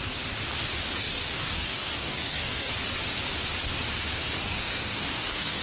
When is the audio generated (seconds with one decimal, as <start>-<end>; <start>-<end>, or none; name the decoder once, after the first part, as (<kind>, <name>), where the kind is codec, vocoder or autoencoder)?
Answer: 1.0-2.7 (codec, DAC); 4.4-5.6